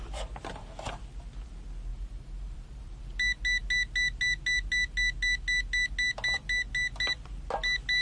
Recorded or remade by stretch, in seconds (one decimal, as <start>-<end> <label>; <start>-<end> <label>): 0.0-1.9 recorded; 1.9-3.0 remade; 3.0-8.0 recorded